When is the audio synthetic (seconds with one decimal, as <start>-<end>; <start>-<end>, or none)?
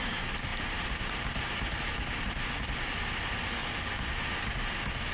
none